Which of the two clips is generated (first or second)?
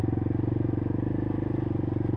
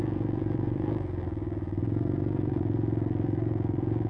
second